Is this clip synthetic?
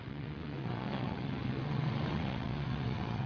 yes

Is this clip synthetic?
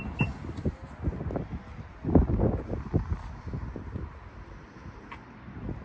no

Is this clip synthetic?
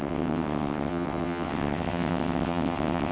yes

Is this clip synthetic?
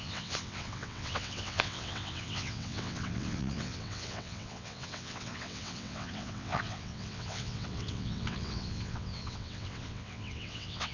yes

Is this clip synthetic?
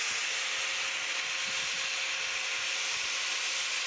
no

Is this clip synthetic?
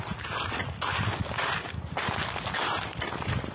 no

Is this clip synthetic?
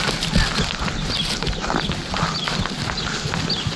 no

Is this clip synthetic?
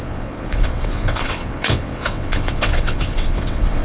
yes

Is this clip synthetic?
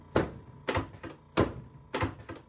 no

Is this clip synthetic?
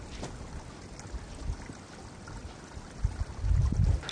no